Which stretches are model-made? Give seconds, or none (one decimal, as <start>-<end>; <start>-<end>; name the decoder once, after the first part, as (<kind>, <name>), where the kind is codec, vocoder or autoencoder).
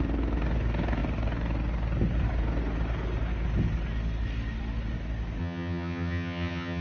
5.4-6.8 (vocoder, HiFi-GAN)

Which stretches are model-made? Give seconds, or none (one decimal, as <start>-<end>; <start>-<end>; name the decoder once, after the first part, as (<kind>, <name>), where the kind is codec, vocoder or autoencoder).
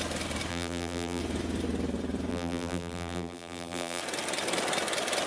0.5-1.2 (vocoder, BigVGAN v2); 2.3-4.0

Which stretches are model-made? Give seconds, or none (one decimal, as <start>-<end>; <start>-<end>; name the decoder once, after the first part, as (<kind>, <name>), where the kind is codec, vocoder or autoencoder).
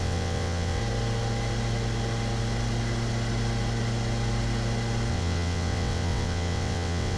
0.0-0.8 (vocoder, WaveNeXt); 5.1-7.2